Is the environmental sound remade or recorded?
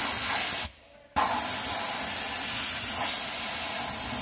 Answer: recorded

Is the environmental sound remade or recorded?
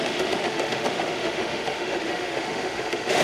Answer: remade